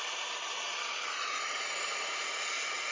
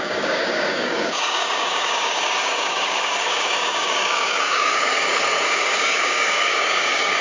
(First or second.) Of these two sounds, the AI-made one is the second